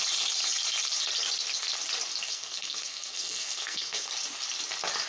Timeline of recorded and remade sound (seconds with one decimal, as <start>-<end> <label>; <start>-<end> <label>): 0.0-2.3 recorded; 2.3-4.1 remade; 4.1-5.1 recorded